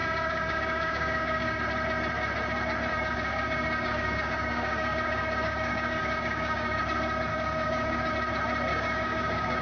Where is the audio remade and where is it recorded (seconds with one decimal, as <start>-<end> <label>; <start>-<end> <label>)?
0.0-1.6 remade; 1.6-2.9 recorded; 2.9-6.8 remade; 6.8-7.3 recorded; 7.3-8.1 remade; 8.1-8.7 recorded; 8.7-9.6 remade